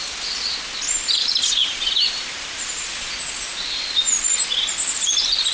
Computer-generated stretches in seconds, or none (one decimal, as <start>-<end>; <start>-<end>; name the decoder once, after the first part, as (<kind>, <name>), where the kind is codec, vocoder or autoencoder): 1.6-3.2 (vocoder, BigVGAN v2); 4.7-5.5